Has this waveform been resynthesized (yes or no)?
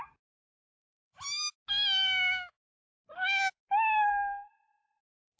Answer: no